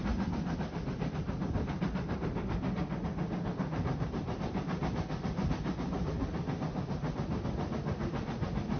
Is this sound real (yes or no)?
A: yes